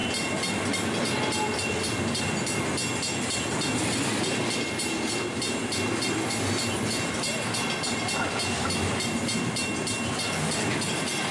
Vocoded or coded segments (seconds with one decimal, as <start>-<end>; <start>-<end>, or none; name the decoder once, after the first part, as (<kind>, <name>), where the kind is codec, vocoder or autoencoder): none